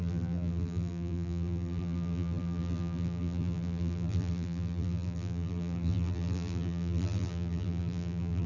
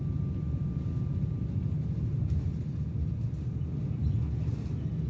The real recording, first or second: second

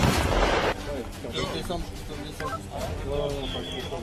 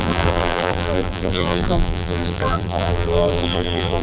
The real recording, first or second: first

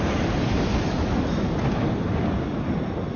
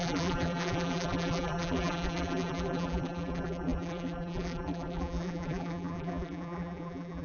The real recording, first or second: first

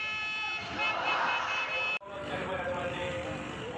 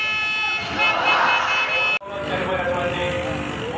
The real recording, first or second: second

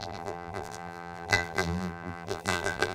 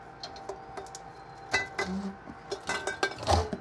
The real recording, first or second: second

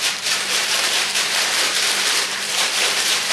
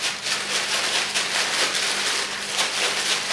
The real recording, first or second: second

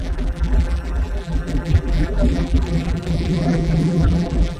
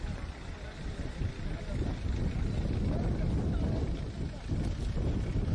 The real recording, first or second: second